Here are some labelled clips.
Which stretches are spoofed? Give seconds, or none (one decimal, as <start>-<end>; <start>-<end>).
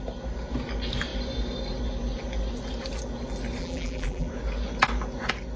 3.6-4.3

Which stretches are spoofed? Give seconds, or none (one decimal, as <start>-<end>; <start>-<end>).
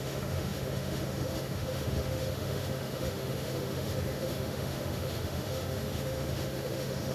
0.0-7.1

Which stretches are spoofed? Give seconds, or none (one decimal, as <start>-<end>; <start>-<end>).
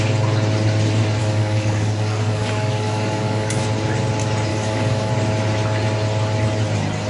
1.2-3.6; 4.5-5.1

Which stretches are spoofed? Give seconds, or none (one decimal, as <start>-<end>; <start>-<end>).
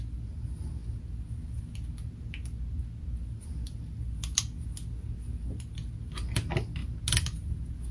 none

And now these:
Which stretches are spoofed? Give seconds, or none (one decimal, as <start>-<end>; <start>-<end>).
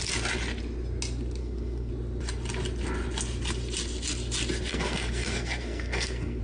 1.4-1.9; 4.7-6.4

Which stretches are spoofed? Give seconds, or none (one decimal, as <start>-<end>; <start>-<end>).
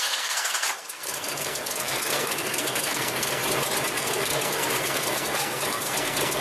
0.0-3.4; 4.0-6.4